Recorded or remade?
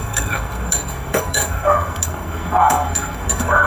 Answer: remade